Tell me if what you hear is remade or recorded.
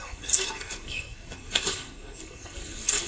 remade